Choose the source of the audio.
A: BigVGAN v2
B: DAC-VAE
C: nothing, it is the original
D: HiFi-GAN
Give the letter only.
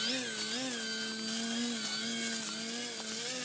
C